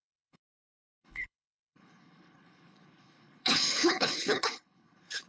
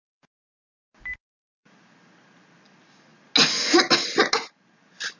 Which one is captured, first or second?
second